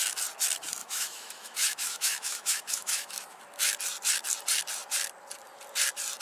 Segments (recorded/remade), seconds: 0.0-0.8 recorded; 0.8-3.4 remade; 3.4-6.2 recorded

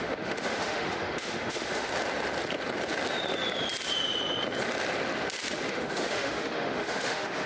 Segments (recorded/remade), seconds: 0.0-1.9 remade; 1.9-5.7 recorded; 5.7-7.5 remade

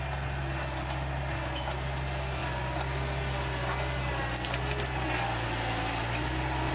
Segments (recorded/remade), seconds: 0.0-6.7 recorded

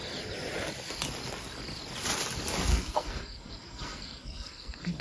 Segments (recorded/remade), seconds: 0.0-2.7 recorded; 2.7-5.0 remade